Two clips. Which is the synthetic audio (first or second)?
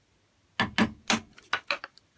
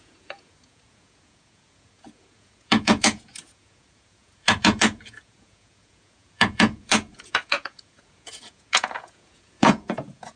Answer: second